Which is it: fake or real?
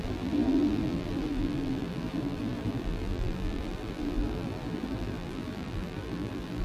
fake